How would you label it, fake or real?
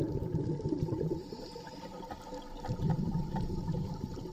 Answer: real